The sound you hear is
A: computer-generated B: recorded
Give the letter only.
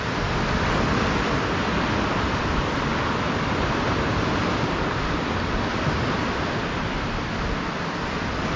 B